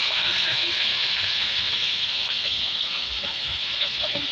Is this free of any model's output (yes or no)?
no